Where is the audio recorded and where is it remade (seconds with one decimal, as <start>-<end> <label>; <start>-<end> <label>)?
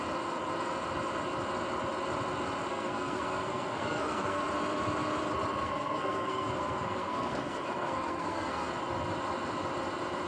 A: 0.0-2.7 recorded; 2.7-4.4 remade; 4.4-5.6 recorded; 5.6-8.7 remade; 8.7-10.3 recorded